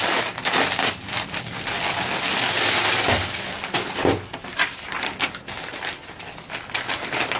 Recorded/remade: recorded